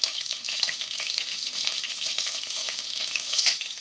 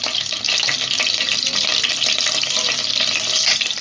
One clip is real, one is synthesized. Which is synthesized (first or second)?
first